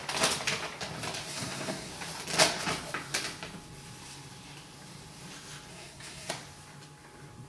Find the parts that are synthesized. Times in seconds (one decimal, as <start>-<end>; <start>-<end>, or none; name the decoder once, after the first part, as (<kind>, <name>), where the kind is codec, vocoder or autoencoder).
1.3-1.9 (codec, SNAC); 5.7-6.3